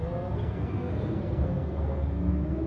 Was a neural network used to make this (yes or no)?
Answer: yes